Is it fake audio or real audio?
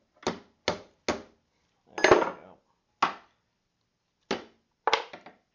real